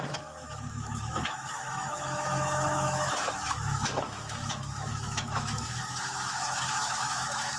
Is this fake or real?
fake